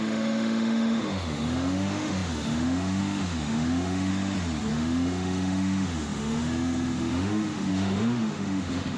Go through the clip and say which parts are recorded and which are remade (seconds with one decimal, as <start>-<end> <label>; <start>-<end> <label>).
0.0-4.1 remade; 4.1-4.7 recorded; 4.7-9.0 remade